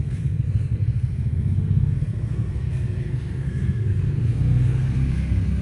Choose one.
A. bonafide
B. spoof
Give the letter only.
B